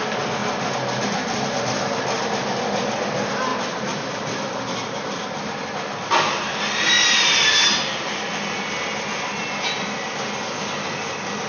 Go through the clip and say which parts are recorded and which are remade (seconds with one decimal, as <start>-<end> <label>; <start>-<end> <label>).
0.0-11.5 recorded